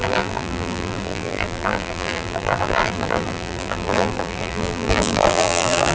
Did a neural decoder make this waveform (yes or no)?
yes